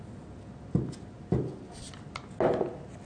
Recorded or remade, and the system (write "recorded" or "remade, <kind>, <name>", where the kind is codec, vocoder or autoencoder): recorded